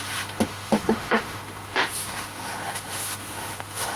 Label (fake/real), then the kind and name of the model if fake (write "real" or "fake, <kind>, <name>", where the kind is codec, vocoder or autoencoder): fake, autoencoder, DAC-VAE